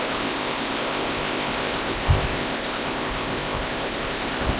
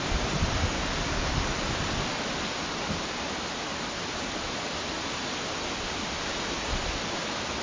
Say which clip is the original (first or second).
second